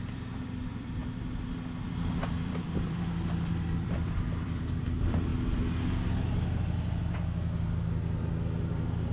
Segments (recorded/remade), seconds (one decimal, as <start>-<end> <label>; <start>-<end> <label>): 0.0-1.0 remade; 1.0-1.8 recorded; 1.8-5.3 remade; 5.3-8.7 recorded; 8.7-9.1 remade